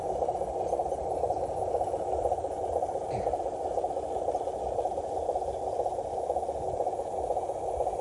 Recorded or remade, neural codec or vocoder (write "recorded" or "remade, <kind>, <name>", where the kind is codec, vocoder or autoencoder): recorded